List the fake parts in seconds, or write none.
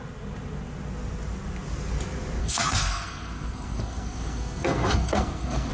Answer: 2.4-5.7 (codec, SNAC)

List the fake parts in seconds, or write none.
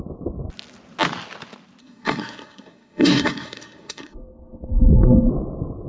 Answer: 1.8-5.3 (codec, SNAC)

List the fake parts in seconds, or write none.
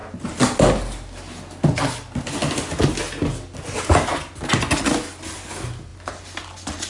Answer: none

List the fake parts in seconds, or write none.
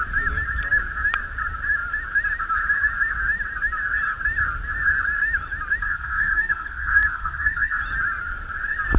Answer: 5.8-7.8 (codec, SNAC)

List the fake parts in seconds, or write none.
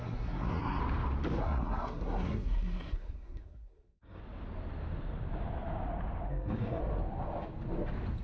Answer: 0.0-0.8 (codec, SNAC); 1.4-4.2; 6.3-6.8